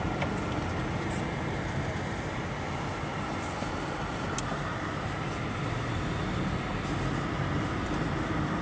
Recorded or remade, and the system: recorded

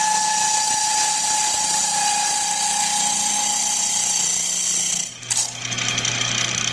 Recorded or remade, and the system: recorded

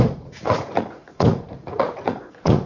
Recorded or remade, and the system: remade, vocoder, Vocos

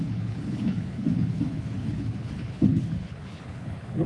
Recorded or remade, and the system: remade, codec, HILCodec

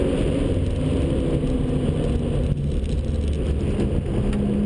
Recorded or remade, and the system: recorded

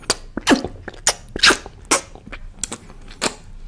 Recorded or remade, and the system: recorded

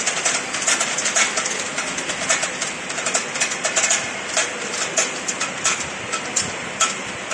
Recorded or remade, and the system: recorded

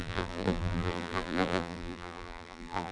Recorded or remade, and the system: remade, vocoder, BigVGAN v2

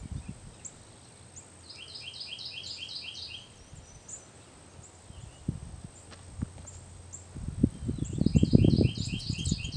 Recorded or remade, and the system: recorded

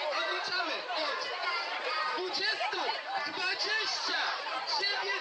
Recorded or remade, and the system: remade, vocoder, BigVGAN v2